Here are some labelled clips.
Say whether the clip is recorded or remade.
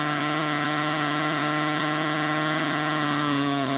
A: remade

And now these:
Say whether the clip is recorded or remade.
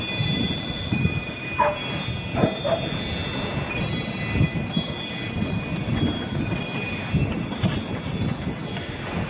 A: recorded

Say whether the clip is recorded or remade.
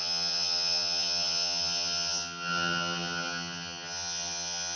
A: remade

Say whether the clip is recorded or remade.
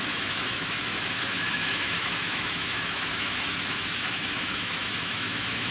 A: remade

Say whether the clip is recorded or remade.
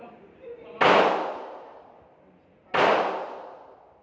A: recorded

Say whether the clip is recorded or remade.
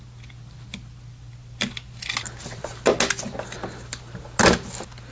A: recorded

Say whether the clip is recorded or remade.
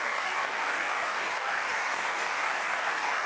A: remade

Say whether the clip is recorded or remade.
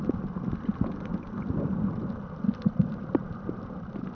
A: remade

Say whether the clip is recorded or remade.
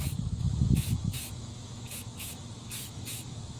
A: remade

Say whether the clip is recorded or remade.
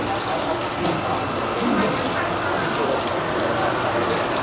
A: recorded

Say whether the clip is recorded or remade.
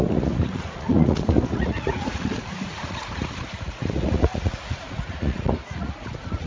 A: remade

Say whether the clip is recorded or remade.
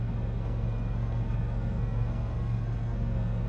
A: remade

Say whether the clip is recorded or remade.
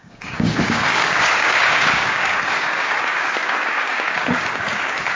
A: remade